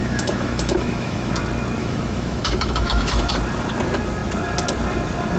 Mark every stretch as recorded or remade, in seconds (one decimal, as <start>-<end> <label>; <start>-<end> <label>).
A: 0.0-1.3 remade; 1.3-1.8 recorded; 1.8-3.3 remade; 3.3-5.4 recorded